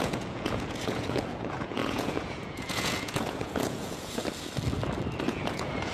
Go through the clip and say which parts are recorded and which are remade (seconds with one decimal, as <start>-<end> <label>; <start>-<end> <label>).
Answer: 0.0-4.2 remade; 4.2-5.3 recorded; 5.3-5.9 remade